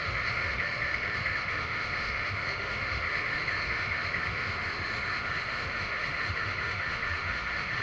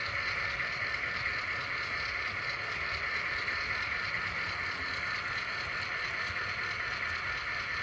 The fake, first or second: first